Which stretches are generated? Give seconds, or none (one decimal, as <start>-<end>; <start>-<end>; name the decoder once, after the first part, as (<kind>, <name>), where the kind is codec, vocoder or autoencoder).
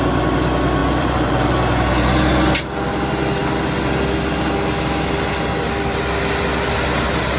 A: 0.8-1.5 (vocoder, BigVGAN v2)